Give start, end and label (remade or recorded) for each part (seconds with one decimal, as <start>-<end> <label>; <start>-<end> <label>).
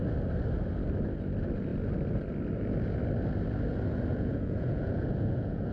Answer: 0.0-4.1 recorded; 4.1-5.7 remade